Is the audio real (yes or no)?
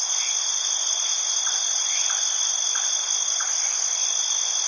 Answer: yes